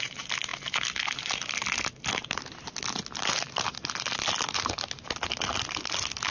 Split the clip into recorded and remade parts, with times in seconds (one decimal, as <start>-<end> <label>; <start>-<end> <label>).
0.0-6.3 recorded